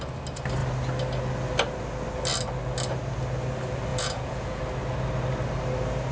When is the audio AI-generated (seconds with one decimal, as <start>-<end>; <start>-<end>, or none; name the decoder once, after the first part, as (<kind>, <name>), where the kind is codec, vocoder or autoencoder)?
3.9-4.6 (vocoder, Vocos)